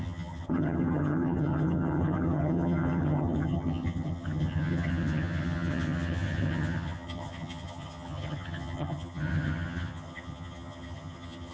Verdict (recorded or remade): remade